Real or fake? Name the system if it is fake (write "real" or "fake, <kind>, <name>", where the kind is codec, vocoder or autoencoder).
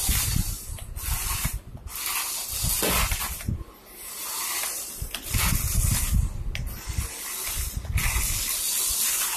real